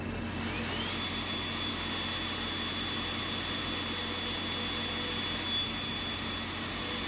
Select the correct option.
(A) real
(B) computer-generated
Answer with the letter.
A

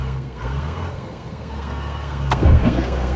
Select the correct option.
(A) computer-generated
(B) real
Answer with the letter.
A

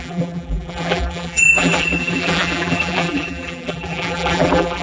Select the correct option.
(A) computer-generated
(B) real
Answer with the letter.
A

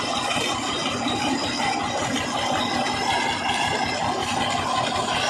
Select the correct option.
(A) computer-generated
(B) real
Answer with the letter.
B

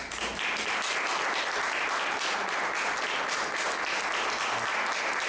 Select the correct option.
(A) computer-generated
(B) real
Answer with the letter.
B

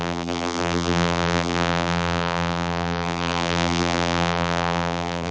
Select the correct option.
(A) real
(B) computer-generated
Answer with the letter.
B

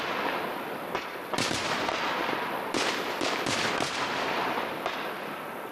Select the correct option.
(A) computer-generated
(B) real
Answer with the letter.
A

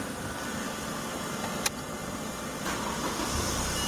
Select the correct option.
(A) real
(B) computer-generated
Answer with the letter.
A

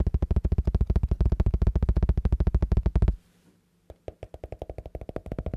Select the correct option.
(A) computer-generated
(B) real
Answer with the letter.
B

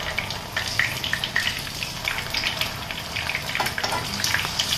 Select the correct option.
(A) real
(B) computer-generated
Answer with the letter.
A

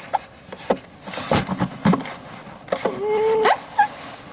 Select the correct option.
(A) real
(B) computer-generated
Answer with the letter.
A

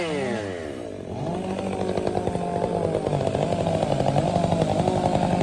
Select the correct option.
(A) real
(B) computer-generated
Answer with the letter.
A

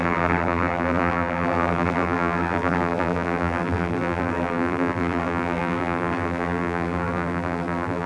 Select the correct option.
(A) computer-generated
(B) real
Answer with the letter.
A